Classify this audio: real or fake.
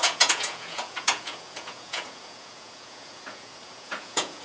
fake